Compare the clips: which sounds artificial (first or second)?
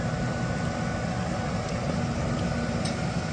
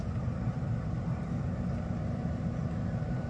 second